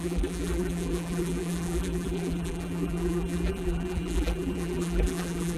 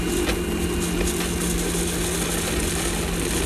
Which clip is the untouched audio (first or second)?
second